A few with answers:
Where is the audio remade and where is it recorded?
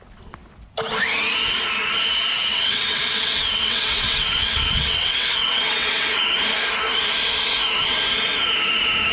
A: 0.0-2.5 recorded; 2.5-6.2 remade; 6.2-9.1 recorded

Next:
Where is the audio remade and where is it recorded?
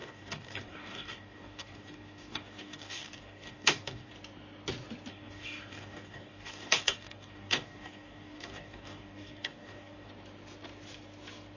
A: 0.0-4.1 remade; 4.1-5.1 recorded; 5.1-10.1 remade; 10.1-11.6 recorded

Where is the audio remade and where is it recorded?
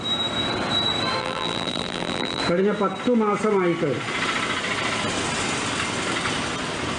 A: 0.0-1.2 recorded; 1.2-2.4 remade; 2.4-7.0 recorded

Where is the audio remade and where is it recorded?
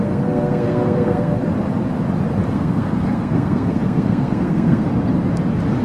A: 0.0-1.4 remade; 1.4-2.5 recorded; 2.5-4.9 remade; 4.9-5.8 recorded